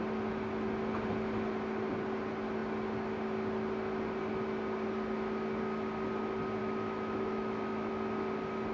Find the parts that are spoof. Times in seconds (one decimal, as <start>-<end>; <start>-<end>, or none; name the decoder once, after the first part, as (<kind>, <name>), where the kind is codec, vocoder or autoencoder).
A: 6.6-7.9 (autoencoder, DAC-VAE)